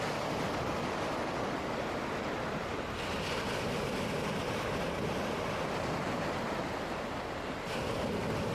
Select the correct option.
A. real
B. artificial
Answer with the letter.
A